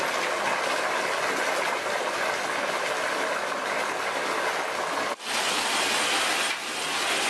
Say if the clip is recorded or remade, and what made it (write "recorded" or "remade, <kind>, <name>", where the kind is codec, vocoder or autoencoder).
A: recorded